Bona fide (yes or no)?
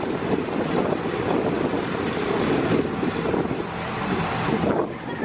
yes